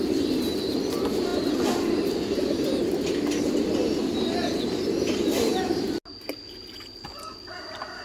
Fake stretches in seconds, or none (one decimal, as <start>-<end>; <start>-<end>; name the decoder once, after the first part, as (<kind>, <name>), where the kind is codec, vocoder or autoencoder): none